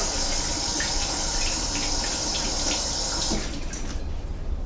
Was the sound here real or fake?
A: real